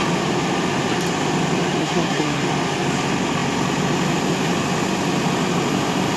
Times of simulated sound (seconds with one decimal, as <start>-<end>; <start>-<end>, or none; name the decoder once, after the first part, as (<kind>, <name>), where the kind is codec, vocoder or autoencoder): 1.8-2.4 (codec, SNAC)